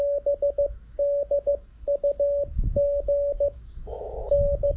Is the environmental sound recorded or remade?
remade